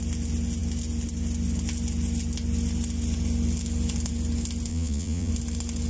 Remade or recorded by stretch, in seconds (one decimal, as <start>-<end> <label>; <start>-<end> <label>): 0.0-4.7 recorded; 4.7-5.3 remade; 5.3-5.9 recorded